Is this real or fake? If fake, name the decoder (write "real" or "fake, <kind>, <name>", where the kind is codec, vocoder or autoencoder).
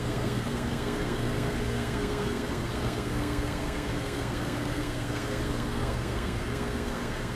fake, codec, SNAC